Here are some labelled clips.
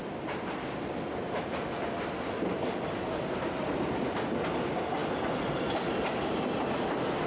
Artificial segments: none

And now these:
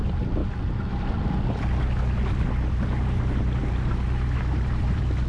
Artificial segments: none

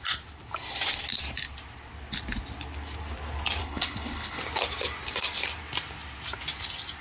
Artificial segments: 3.6-4.4

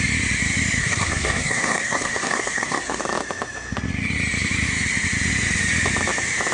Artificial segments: 0.8-3.0

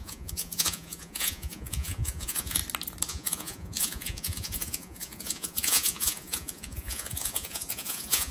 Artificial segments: 0.0-2.6; 3.1-8.3

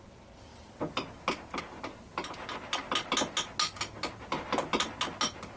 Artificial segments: none

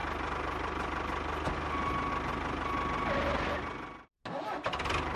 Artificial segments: none